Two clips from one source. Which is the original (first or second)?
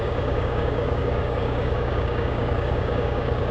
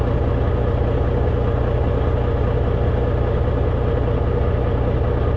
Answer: second